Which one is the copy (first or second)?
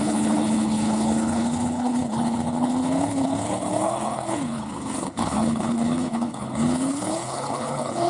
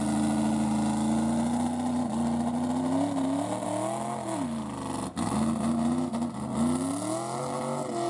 first